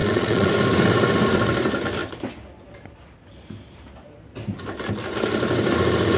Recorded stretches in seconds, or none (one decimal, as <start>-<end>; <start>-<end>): 0.5-6.2